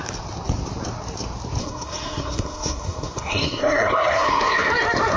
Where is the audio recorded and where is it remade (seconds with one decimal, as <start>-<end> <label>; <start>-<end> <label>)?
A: 0.0-1.6 recorded; 1.6-4.7 remade; 4.7-5.2 recorded

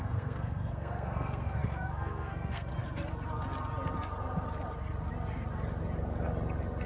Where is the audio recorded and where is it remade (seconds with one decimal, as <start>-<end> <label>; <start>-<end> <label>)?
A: 0.0-2.7 remade; 2.7-6.9 recorded

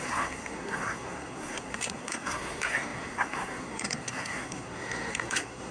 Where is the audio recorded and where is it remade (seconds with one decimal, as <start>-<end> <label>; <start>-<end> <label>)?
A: 0.0-5.7 remade

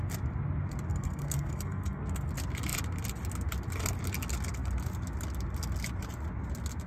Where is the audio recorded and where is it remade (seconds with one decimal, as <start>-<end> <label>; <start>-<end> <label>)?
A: 0.0-0.9 recorded; 0.9-2.3 remade; 2.3-6.9 recorded

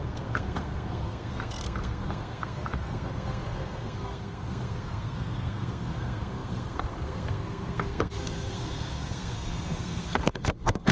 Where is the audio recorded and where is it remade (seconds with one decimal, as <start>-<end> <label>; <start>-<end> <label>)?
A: 0.0-10.9 remade

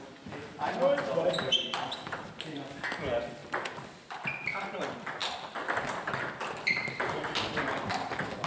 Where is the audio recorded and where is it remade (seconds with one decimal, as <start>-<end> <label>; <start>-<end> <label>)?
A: 0.0-8.5 recorded